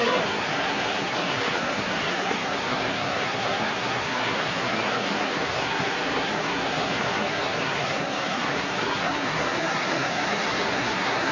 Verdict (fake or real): fake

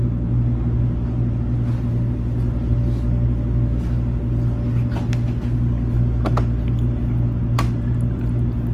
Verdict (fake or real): real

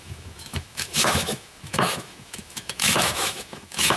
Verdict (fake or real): fake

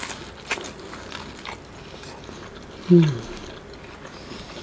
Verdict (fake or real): real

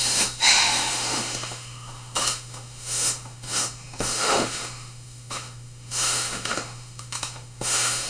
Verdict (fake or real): fake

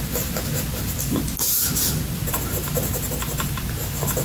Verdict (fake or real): real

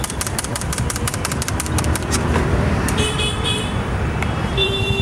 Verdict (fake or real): fake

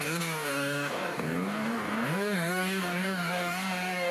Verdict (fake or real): fake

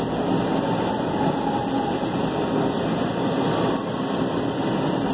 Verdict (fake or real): real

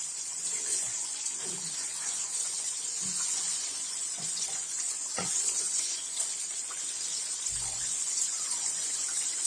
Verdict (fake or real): fake